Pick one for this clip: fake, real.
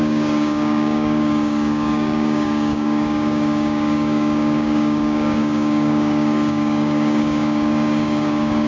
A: fake